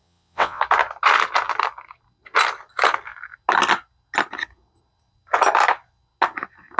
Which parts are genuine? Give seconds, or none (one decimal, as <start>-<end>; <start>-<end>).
0.6-6.8